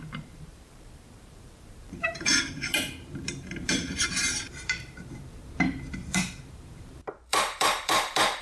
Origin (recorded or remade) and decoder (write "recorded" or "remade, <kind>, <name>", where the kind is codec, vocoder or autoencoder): remade, vocoder, BigVGAN v2